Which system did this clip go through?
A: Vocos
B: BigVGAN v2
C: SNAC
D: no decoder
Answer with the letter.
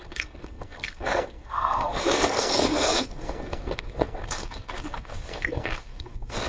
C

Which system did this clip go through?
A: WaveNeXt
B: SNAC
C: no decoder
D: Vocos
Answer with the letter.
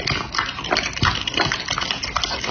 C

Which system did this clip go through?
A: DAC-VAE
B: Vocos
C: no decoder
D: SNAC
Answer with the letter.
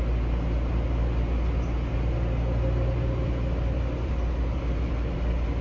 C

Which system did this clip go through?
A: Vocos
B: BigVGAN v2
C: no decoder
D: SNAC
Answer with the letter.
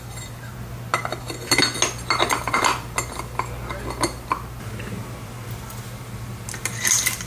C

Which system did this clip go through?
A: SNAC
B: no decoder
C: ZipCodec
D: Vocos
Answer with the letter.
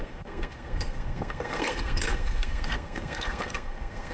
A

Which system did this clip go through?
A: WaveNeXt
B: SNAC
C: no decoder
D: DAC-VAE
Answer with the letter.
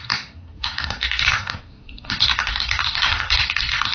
B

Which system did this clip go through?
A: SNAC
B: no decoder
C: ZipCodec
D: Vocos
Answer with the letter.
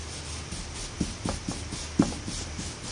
B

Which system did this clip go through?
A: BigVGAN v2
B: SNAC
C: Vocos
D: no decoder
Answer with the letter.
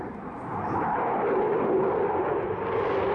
D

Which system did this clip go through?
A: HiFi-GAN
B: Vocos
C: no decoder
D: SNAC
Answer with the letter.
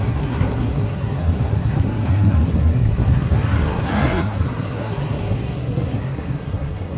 D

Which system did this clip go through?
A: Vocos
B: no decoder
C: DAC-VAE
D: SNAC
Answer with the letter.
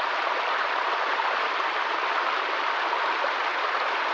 B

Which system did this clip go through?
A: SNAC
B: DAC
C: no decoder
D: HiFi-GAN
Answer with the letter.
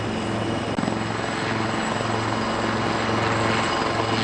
C